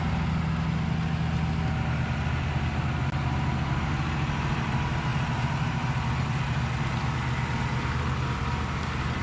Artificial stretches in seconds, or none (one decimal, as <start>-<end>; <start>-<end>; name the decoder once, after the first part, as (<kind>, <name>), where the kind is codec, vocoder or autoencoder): 5.1-6.4 (vocoder, BigVGAN v2)